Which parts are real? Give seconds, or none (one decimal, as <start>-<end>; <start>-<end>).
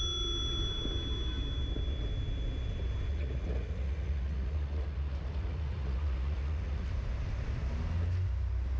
0.0-3.1; 6.9-8.8